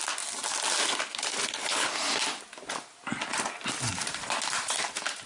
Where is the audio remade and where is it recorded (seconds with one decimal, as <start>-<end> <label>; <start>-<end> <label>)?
0.0-1.4 recorded; 1.4-2.1 remade; 2.1-5.3 recorded